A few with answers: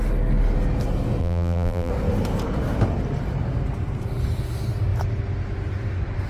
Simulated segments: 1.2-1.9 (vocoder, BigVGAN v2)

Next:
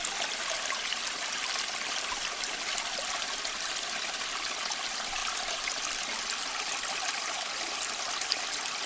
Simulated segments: none

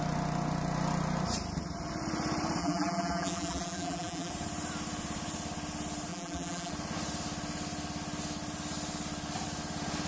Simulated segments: 2.6-4.3 (vocoder, BigVGAN v2); 6.1-6.7

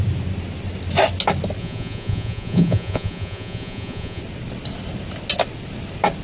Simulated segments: 1.6-4.2 (vocoder, Vocos)

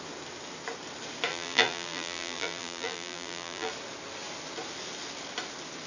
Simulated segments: 1.3-3.7 (vocoder, BigVGAN v2)

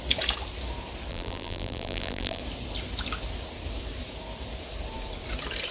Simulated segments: 1.1-2.4 (vocoder, BigVGAN v2)

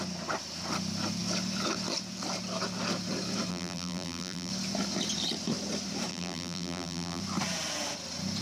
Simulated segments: 3.5-4.5 (vocoder, BigVGAN v2); 6.1-7.2

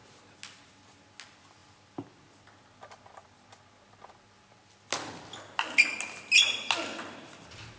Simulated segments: none